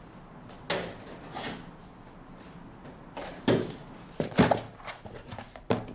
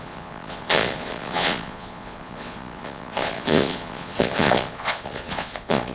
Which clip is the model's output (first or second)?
second